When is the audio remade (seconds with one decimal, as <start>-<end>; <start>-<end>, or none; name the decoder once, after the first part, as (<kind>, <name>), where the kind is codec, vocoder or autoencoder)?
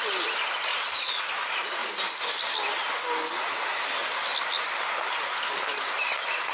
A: 0.7-1.3 (vocoder, Vocos)